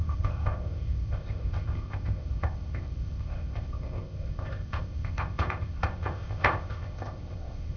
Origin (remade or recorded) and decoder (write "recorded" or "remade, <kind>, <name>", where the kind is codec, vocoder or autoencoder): remade, codec, ZipCodec